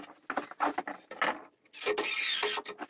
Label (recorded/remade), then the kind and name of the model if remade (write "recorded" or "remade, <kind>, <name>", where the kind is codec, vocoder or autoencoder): recorded